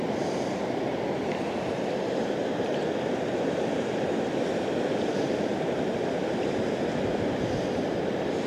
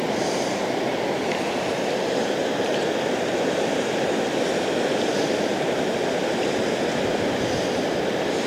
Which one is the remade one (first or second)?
first